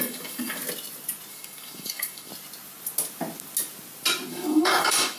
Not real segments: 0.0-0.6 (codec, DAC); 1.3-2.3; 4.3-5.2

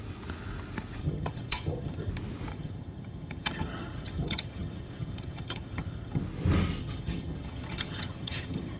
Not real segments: 1.0-2.1 (vocoder, HiFi-GAN); 2.5-6.2; 6.8-8.8

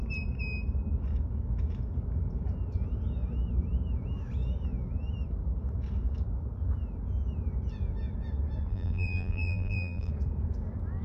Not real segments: 8.7-10.1 (vocoder, BigVGAN v2)